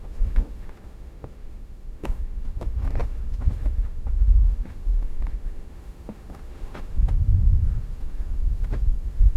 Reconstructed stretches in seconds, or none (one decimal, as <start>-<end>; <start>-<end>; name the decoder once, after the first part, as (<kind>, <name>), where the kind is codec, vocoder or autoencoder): 0.0-9.4 (autoencoder, DAC-VAE)